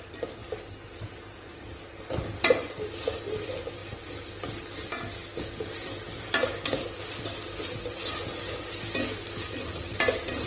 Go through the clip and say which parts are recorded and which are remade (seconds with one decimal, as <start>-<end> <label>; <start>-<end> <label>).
0.0-10.5 recorded